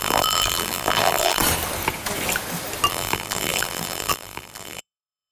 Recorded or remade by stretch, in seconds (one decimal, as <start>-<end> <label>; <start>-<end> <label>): 0.0-1.4 remade; 1.4-2.9 recorded; 2.9-5.3 remade